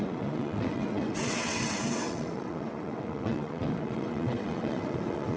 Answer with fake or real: fake